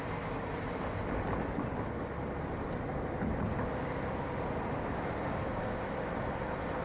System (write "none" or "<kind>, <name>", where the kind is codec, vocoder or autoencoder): none